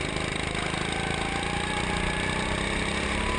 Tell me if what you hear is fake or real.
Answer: real